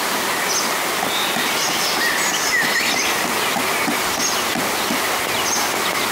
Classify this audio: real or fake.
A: real